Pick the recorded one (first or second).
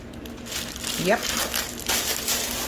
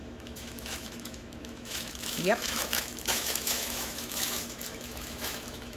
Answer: first